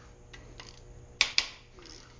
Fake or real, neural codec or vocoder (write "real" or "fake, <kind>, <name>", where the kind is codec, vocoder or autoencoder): real